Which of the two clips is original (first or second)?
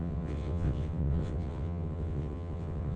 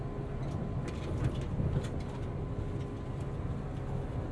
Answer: second